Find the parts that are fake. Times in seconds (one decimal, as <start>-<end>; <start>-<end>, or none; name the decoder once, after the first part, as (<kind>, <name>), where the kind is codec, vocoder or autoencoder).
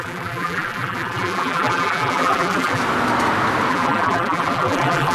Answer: 0.0-2.8 (vocoder, BigVGAN v2); 3.7-5.1